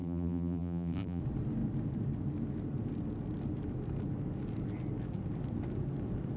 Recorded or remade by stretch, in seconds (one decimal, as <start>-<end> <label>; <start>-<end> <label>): 0.0-1.2 remade; 1.2-6.4 recorded